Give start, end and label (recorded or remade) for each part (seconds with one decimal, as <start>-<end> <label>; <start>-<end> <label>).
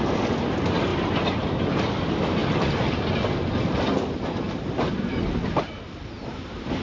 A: 0.0-6.8 recorded